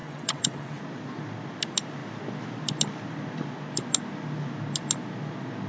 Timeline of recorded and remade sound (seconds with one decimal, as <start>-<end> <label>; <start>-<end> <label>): 0.0-0.8 remade; 0.8-5.7 recorded